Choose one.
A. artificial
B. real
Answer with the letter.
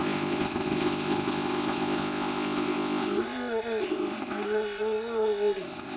A